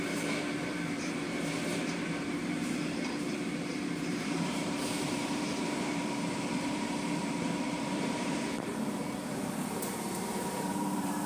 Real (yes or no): no